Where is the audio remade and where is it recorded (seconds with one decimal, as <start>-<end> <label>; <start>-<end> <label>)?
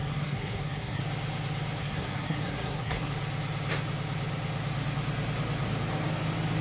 0.0-1.0 remade; 1.0-1.8 recorded; 1.8-3.1 remade; 3.1-6.6 recorded